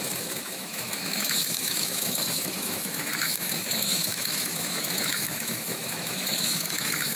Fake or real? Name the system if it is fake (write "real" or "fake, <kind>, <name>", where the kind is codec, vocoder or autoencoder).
fake, autoencoder, DAC-VAE